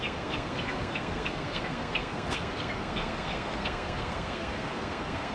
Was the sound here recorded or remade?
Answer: remade